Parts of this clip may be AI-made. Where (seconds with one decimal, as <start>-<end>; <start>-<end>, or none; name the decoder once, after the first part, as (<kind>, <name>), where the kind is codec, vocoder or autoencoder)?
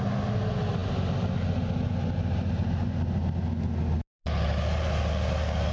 none